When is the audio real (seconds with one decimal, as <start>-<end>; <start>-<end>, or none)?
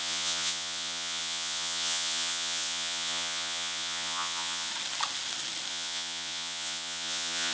4.7-5.7